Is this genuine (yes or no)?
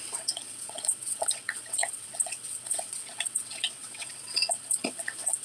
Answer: no